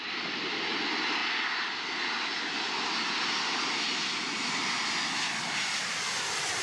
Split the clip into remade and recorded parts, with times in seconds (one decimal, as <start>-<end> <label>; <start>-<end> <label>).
0.0-6.6 recorded